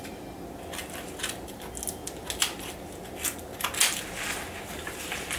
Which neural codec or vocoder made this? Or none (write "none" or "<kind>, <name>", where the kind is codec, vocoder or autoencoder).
none